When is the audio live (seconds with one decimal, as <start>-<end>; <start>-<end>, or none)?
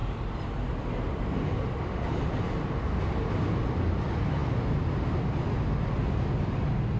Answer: 2.6-7.0